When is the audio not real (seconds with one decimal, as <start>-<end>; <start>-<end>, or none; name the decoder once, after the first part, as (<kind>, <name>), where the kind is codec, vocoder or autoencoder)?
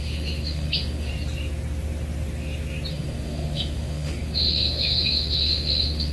0.0-1.1 (autoencoder, DAC-VAE); 2.9-6.1